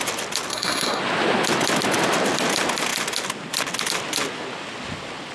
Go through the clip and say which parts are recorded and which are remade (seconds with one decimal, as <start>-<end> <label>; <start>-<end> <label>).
0.0-0.5 recorded; 0.5-1.0 remade; 1.0-5.3 recorded